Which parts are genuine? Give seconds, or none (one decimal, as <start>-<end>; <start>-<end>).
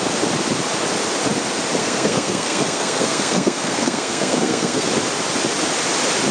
0.0-1.8; 4.9-6.3